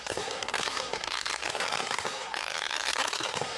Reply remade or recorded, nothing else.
remade